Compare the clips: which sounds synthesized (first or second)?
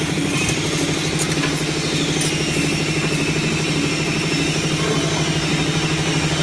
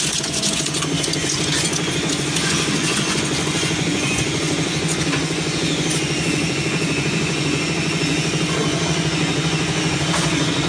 second